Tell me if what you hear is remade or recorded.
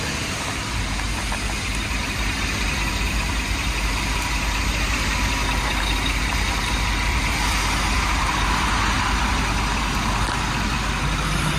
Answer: recorded